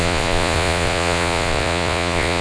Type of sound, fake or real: fake